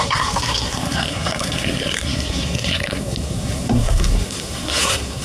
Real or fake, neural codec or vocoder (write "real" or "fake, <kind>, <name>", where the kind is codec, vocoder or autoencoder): fake, codec, SNAC